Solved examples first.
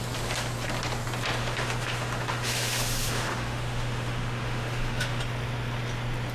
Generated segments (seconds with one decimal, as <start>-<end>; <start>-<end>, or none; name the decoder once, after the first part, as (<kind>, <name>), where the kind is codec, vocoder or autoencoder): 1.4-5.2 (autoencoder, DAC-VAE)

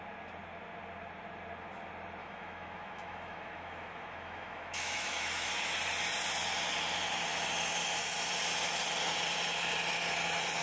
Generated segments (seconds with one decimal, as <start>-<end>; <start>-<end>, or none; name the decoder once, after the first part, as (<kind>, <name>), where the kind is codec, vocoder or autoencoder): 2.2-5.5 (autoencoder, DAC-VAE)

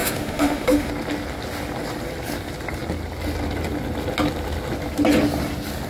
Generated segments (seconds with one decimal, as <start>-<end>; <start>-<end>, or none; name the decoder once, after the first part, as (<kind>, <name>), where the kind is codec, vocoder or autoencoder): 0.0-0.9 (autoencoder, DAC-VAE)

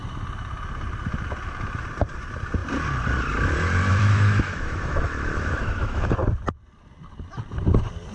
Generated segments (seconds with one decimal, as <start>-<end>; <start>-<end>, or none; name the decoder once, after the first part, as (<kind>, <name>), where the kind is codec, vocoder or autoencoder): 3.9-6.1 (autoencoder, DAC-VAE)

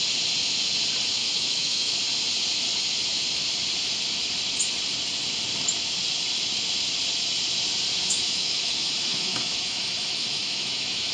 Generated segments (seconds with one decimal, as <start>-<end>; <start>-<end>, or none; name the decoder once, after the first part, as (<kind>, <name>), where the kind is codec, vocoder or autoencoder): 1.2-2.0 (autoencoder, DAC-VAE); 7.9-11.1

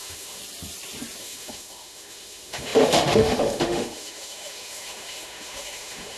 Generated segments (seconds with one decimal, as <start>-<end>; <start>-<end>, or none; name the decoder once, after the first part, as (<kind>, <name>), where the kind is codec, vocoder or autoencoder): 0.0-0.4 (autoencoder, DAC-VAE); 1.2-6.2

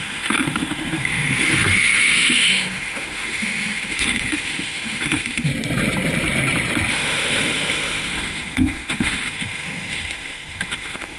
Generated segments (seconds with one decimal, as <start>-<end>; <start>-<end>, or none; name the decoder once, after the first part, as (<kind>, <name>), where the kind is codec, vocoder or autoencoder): 0.0-5.5 (autoencoder, DAC-VAE); 6.9-11.2

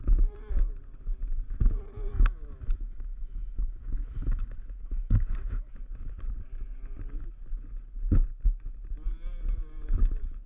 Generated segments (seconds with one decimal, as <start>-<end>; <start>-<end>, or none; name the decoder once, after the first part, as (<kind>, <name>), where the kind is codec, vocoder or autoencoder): 2.1-5.7 (autoencoder, DAC-VAE)